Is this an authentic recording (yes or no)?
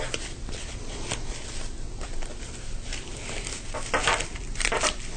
no